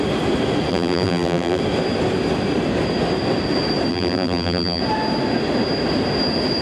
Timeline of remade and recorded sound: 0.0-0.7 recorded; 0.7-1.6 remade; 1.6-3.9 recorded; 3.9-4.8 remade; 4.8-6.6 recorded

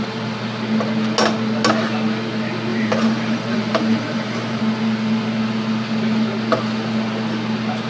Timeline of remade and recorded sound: 0.0-2.7 recorded; 2.7-4.6 remade; 4.6-7.9 recorded

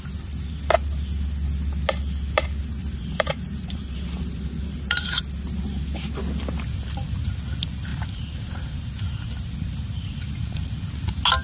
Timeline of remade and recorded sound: 0.0-2.8 recorded; 2.8-5.2 remade; 5.2-7.9 recorded; 7.9-8.9 remade; 8.9-11.4 recorded

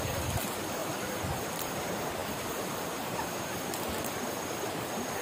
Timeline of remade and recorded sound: 0.0-5.2 recorded